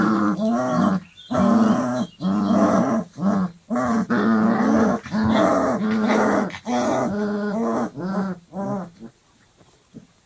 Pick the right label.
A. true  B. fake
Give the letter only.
A